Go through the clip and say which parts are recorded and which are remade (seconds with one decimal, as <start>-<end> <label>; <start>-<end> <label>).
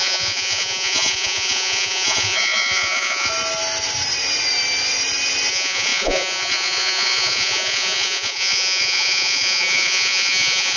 0.0-3.3 remade; 3.3-5.5 recorded; 5.5-10.8 remade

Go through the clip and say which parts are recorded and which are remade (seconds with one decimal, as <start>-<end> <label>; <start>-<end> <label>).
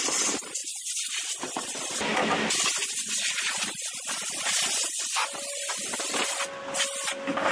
0.0-7.5 recorded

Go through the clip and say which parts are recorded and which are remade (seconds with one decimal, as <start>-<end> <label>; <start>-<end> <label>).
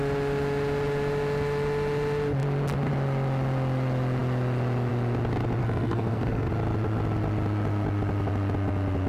0.0-5.6 recorded; 5.6-6.5 remade; 6.5-9.1 recorded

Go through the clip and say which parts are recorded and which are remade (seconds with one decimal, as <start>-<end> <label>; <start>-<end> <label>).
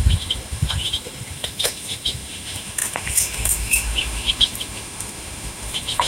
0.0-6.1 remade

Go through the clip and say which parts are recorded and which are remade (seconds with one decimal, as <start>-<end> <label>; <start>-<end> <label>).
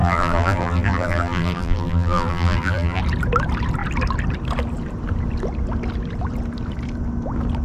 0.0-3.0 remade; 3.0-7.6 recorded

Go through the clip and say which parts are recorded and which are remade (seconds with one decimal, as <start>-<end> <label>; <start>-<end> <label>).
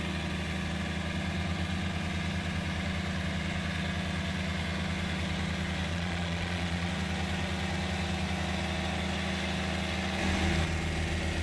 0.0-5.9 recorded; 5.9-6.9 remade; 6.9-11.4 recorded